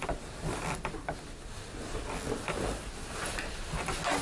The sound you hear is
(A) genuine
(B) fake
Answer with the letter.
A